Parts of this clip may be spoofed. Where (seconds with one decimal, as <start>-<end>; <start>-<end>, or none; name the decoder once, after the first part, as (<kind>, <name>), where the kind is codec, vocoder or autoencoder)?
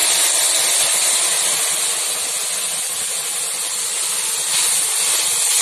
none